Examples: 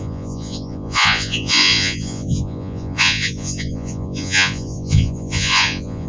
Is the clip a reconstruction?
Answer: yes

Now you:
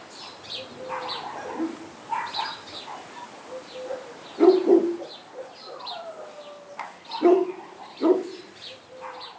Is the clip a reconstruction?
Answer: no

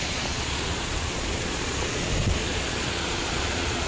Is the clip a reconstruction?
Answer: yes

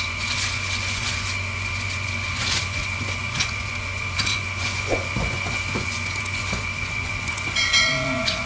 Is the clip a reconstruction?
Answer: yes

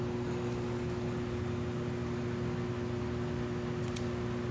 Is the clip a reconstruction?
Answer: no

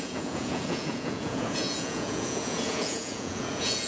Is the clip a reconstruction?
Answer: yes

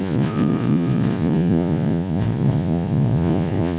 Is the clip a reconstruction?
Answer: yes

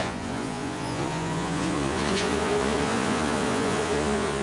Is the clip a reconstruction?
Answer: yes